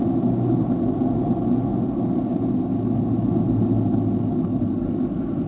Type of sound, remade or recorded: recorded